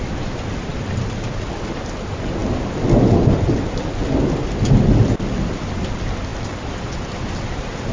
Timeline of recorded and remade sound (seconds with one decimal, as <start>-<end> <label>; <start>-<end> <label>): 0.0-7.9 recorded